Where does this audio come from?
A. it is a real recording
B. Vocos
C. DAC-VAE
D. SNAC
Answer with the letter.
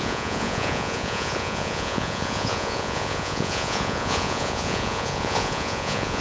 B